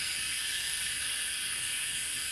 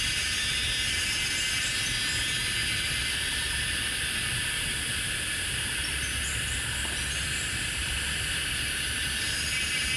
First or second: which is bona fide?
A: second